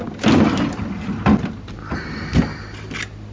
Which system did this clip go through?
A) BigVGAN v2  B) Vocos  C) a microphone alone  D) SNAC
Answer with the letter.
C